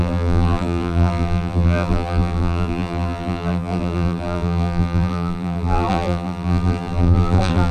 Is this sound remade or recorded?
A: remade